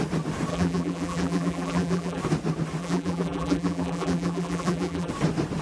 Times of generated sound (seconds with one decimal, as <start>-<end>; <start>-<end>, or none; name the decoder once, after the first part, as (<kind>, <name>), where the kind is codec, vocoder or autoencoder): 0.5-2.2 (vocoder, BigVGAN v2); 2.8-5.1